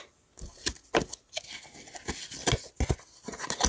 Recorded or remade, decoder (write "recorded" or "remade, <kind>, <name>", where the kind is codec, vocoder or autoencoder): recorded